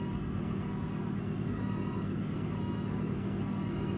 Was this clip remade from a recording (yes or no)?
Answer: yes